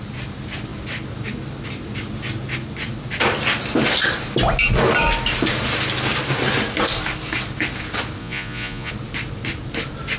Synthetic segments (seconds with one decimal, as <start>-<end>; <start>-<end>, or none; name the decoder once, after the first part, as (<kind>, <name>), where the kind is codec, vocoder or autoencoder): 8.2-8.9 (vocoder, Vocos)